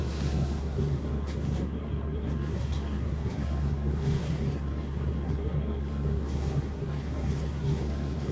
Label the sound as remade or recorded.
remade